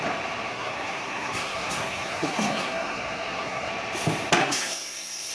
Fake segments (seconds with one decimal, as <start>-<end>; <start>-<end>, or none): 0.5-3.7; 4.4-5.3